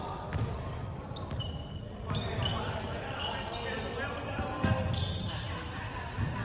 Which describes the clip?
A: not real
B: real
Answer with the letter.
B